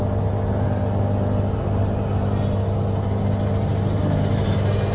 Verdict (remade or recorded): recorded